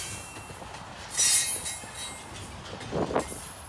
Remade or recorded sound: recorded